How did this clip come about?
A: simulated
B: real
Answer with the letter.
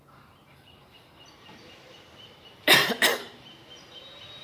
A